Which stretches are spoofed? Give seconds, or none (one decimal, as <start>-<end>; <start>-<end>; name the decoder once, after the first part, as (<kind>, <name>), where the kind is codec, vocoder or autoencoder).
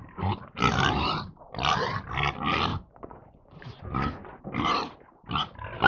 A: 2.7-4.4 (vocoder, Vocos)